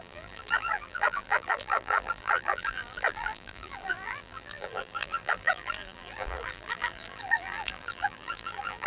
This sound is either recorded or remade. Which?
remade